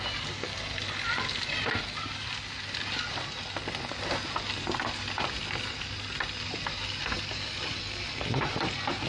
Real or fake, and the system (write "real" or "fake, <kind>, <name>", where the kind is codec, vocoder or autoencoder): real